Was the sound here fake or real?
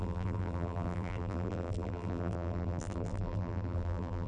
fake